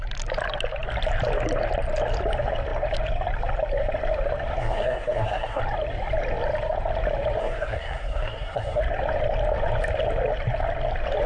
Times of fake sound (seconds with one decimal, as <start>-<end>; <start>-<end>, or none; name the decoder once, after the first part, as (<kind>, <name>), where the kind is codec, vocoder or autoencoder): 4.6-5.6 (codec, SNAC); 7.4-8.8